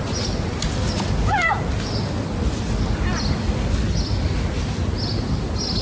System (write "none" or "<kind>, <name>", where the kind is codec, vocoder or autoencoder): none